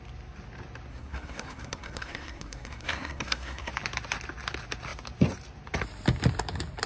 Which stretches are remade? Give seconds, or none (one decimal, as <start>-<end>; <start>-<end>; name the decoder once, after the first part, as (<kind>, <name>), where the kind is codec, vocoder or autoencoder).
0.9-3.7 (codec, SNAC)